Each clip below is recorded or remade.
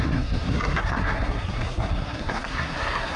remade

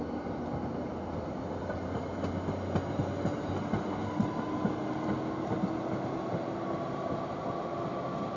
recorded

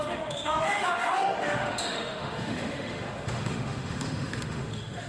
remade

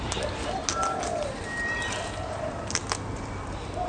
recorded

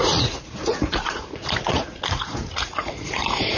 remade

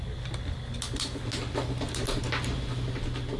recorded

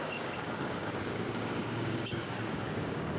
remade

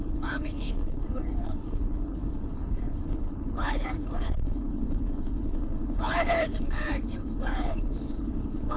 remade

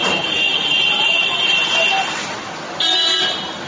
recorded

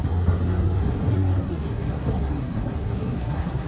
remade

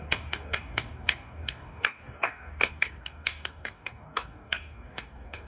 remade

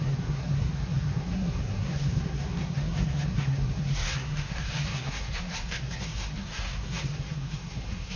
remade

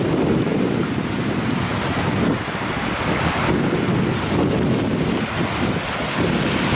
recorded